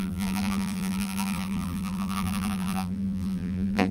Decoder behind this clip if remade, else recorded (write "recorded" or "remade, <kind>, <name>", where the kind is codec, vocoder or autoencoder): remade, vocoder, BigVGAN v2